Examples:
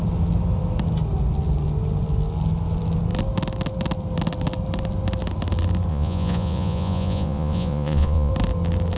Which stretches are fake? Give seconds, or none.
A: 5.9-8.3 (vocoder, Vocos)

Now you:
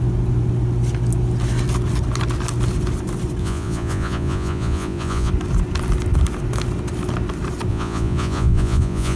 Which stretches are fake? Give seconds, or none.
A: 3.4-5.3 (vocoder, Vocos); 7.7-9.2

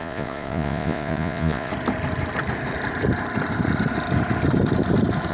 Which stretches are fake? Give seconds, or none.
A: 0.0-1.7 (vocoder, Vocos)

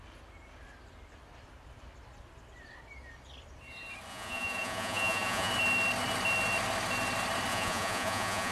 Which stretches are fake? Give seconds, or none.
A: 4.1-5.5 (vocoder, Vocos); 7.5-8.5

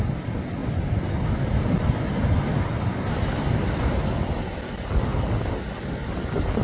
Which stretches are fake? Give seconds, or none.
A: none